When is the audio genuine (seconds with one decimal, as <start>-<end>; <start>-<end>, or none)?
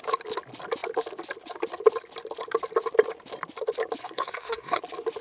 0.0-4.0; 4.8-5.2